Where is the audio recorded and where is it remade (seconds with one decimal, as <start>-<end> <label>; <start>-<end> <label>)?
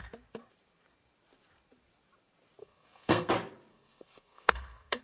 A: 0.0-2.6 recorded; 2.6-3.3 remade; 3.3-3.7 recorded; 3.7-5.0 remade